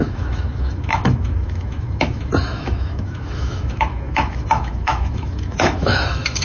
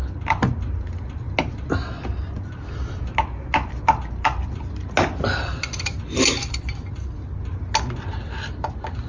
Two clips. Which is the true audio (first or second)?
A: second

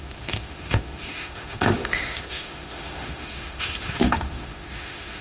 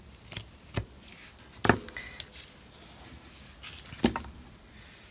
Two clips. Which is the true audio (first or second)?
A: second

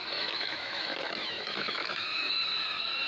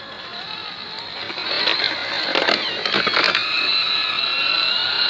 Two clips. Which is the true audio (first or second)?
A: second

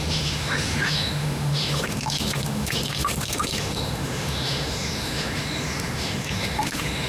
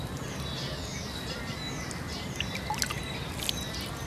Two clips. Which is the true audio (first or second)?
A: second